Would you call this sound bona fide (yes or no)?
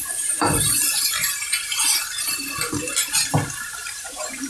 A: no